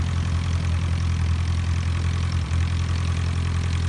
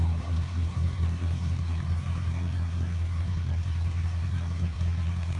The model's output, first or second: second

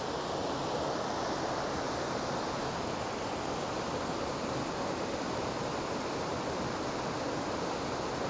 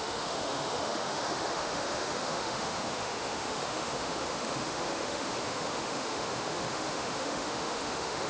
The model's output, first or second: second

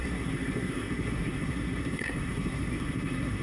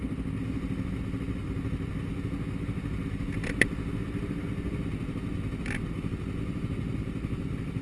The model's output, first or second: first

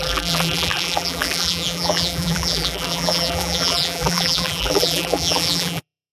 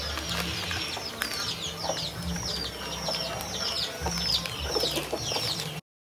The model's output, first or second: first